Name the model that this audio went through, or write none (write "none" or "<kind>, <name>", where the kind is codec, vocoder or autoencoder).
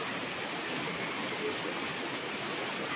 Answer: none